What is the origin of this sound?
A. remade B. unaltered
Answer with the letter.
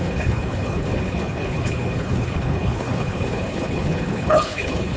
A